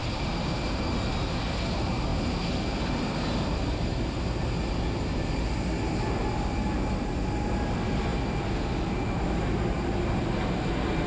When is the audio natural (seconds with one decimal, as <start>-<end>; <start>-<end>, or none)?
0.0-11.1

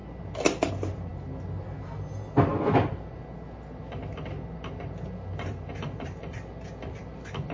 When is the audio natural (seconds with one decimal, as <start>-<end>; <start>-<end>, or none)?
0.0-7.5

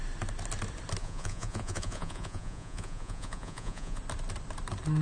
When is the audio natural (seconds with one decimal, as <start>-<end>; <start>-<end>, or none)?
0.0-1.0; 4.0-5.0

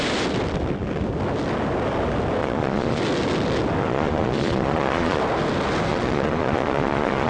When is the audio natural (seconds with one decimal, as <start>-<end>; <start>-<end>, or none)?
0.0-2.4; 3.0-3.8; 5.2-5.9

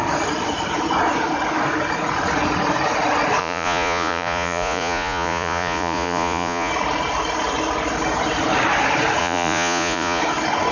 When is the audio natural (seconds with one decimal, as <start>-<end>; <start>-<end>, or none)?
0.0-3.4; 6.7-9.2; 10.2-10.7

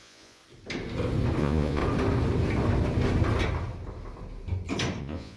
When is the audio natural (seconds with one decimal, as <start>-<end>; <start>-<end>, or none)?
0.4-1.4; 1.8-5.0